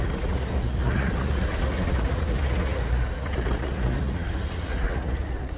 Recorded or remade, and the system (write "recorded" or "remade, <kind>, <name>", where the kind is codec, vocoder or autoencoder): remade, vocoder, Vocos